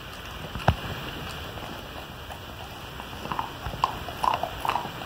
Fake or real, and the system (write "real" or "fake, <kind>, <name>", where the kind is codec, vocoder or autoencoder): real